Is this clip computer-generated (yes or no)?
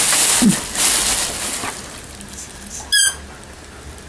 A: no